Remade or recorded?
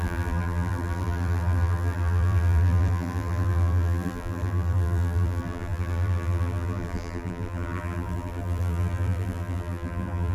remade